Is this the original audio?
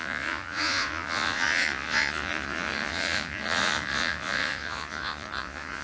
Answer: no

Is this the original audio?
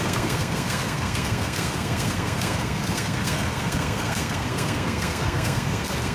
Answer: no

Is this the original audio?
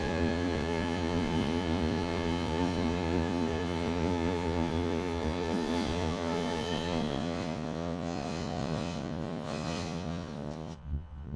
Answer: no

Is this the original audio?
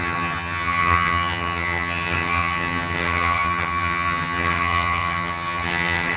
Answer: no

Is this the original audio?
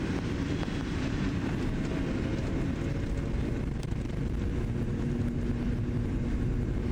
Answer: yes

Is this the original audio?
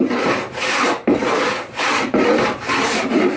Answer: no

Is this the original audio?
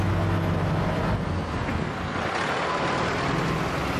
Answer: yes